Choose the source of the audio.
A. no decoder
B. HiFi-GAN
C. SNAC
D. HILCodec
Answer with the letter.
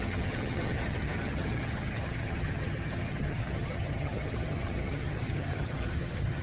B